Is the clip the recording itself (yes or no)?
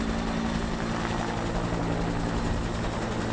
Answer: yes